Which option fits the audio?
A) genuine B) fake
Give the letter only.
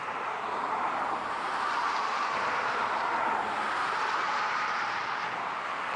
B